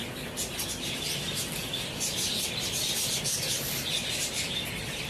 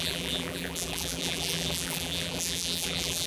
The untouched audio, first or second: first